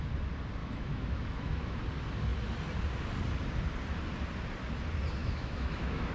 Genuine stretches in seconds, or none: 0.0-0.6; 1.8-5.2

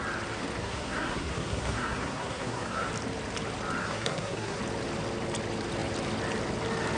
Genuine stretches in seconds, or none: 0.0-0.6; 2.9-3.8; 4.6-7.0

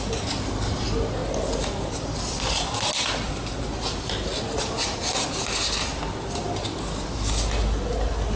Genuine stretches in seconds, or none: 0.0-8.4

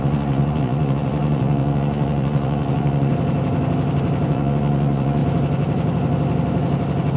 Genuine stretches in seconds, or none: 3.1-4.3; 5.2-7.2